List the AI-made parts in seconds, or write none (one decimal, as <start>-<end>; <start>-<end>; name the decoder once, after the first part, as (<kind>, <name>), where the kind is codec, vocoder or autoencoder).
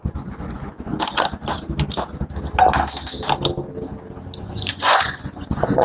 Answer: 0.0-0.9 (vocoder, Vocos); 4.4-5.8